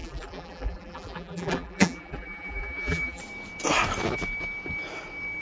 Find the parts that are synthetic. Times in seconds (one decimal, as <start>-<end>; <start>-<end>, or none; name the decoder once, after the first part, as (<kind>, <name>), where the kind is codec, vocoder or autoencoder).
0.0-3.2 (vocoder, BigVGAN v2)